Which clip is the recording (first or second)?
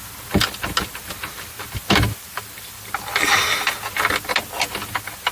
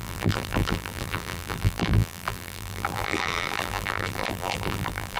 first